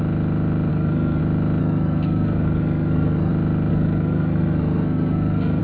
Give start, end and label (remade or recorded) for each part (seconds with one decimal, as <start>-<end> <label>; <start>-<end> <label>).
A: 0.0-0.7 recorded; 0.7-1.2 remade; 1.2-1.6 recorded; 1.6-3.3 remade; 3.3-3.7 recorded; 3.7-5.6 remade